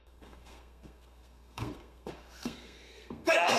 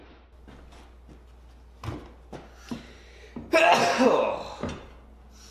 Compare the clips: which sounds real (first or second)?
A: second